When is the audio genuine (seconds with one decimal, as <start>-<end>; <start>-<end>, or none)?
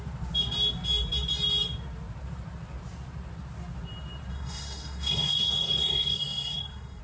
0.0-4.3